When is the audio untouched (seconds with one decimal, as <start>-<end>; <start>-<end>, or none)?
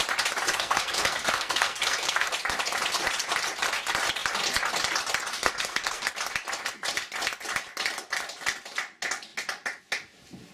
0.0-0.5; 2.3-5.4; 6.1-10.5